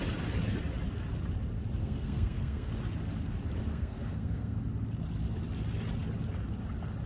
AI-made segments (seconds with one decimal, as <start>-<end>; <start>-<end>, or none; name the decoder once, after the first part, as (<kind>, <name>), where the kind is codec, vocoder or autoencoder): 1.8-2.7 (codec, SNAC); 3.7-4.6